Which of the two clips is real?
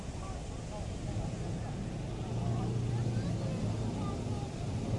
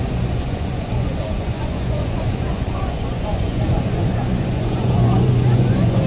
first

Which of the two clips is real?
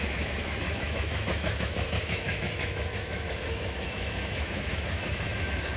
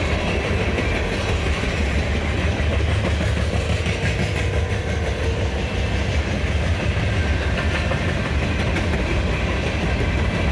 second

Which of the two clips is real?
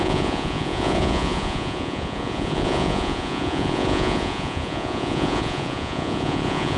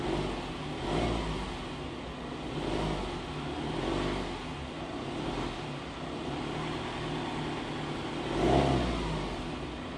second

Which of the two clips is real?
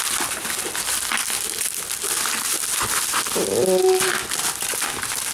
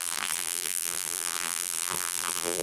first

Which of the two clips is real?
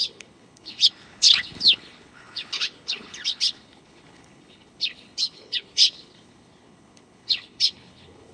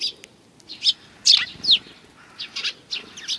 second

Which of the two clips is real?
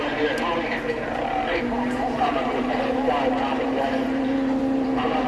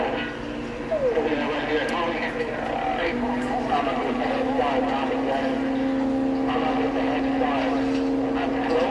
second